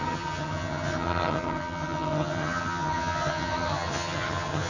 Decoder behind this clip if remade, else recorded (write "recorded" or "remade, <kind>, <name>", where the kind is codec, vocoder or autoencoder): remade, vocoder, HiFi-GAN